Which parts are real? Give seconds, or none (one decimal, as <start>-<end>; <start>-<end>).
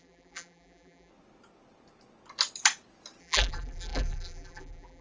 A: 1.1-3.2